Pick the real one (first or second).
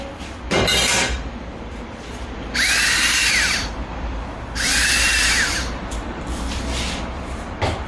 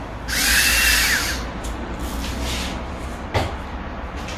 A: second